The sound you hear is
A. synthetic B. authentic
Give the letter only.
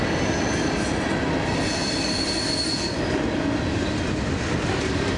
B